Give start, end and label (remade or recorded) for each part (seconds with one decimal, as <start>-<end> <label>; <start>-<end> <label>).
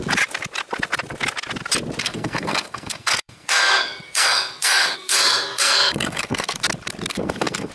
0.0-2.0 recorded; 2.0-6.6 remade; 6.6-7.1 recorded; 7.1-7.7 remade